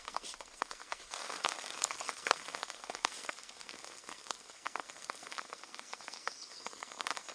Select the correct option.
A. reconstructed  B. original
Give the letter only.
A